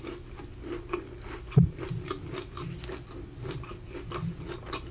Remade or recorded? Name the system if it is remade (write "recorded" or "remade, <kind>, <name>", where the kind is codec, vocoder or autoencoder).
recorded